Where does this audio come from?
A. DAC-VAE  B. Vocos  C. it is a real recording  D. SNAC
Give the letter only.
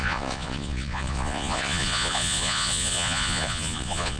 B